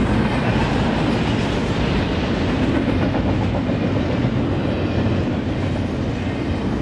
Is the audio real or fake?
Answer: real